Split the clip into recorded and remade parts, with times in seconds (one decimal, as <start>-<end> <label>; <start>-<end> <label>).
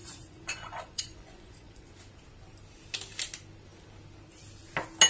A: 0.0-2.0 remade; 2.0-5.1 recorded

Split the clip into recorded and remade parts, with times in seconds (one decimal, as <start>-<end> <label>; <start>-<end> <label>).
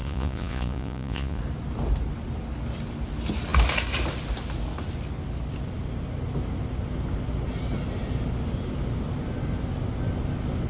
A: 0.0-1.4 remade; 1.4-10.7 recorded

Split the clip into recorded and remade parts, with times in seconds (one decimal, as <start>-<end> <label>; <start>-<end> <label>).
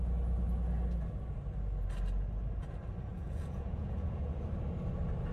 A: 0.0-3.1 recorded; 3.1-4.4 remade; 4.4-5.3 recorded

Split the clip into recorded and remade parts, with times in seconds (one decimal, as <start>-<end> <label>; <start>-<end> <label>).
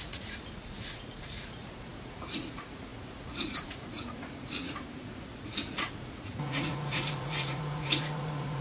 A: 0.0-8.6 remade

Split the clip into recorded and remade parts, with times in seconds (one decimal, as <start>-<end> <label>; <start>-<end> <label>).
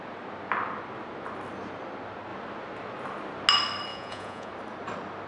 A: 0.0-3.9 recorded; 3.9-4.5 remade; 4.5-5.3 recorded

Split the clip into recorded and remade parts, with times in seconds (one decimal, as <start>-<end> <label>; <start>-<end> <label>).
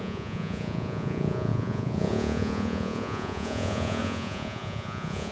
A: 0.0-5.3 remade